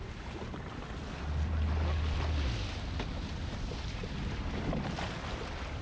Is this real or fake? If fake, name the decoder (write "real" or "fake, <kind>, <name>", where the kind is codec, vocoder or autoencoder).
real